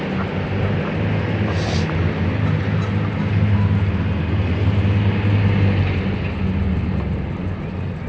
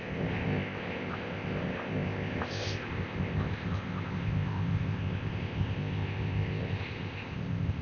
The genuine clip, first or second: first